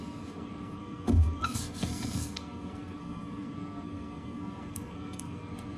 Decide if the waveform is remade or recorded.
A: remade